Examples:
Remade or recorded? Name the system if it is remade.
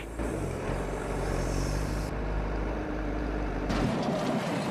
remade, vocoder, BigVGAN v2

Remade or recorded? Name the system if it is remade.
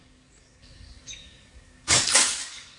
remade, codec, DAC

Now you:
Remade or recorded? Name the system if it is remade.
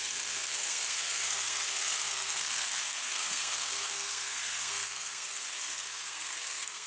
remade, codec, SNAC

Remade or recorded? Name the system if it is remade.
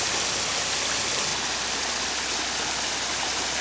recorded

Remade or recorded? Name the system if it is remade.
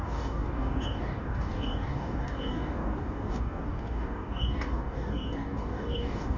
remade, codec, DAC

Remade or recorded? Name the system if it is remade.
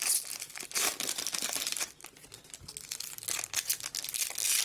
recorded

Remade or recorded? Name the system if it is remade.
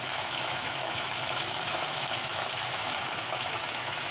remade, autoencoder, DAC-VAE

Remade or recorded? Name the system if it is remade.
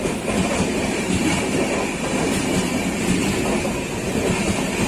recorded